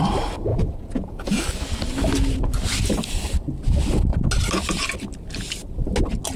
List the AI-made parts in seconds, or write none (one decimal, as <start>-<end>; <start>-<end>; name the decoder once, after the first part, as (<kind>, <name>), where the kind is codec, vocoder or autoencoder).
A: 0.5-1.4 (vocoder, Vocos)